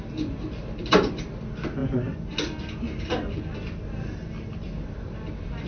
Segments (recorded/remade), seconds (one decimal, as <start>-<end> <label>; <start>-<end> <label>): 0.0-5.7 recorded

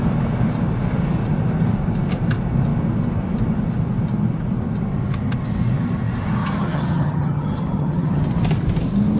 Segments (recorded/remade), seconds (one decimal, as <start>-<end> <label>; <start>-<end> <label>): 0.0-6.4 recorded; 6.4-8.2 remade; 8.2-9.2 recorded

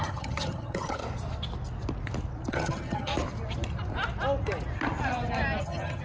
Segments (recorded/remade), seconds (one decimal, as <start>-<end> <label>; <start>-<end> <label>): 0.0-1.0 remade; 1.0-2.5 recorded; 2.5-3.1 remade; 3.1-5.6 recorded; 5.6-6.0 remade

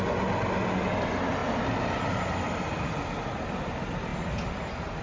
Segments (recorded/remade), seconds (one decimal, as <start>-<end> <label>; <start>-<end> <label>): 0.0-5.0 recorded

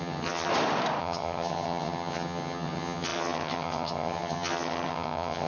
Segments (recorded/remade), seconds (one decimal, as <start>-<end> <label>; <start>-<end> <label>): 0.0-0.5 remade; 0.5-1.0 recorded; 1.0-5.5 remade

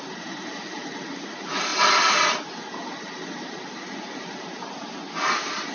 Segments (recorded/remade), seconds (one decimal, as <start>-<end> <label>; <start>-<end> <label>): 0.0-5.7 recorded